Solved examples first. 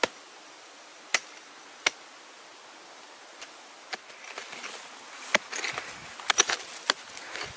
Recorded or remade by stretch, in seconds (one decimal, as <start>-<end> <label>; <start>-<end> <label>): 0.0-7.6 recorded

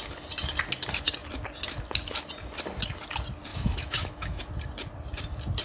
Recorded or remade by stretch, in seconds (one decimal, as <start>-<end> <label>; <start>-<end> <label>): 0.0-3.5 recorded; 3.5-4.4 remade; 4.4-5.6 recorded

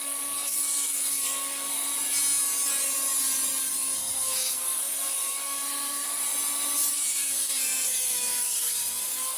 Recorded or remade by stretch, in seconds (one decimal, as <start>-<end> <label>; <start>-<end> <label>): 0.0-1.9 remade; 1.9-3.6 recorded; 3.6-6.2 remade; 6.2-6.9 recorded; 6.9-9.4 remade

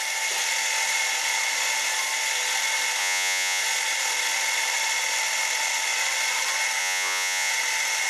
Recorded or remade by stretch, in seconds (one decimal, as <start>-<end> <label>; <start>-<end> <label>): 0.0-3.0 recorded; 3.0-3.6 remade; 3.6-6.8 recorded; 6.8-7.5 remade; 7.5-8.1 recorded

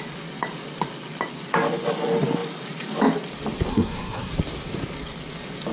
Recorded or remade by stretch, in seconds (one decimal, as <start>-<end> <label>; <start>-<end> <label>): 0.0-3.7 recorded; 3.7-4.3 remade; 4.3-5.7 recorded

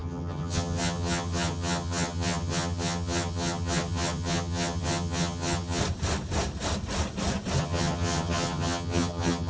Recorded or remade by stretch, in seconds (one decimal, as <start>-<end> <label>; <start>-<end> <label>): 0.0-5.8 remade; 5.8-7.6 recorded; 7.6-9.5 remade